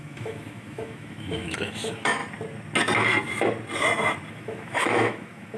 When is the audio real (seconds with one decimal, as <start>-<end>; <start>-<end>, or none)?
2.2-4.3